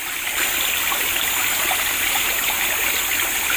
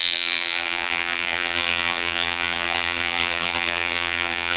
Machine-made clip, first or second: second